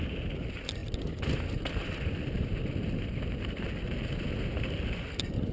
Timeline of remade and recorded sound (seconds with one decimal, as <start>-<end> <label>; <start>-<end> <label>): 0.0-5.5 recorded